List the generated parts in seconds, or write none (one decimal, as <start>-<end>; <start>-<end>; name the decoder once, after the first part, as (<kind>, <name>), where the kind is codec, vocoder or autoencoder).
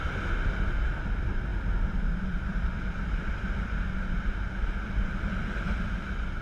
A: none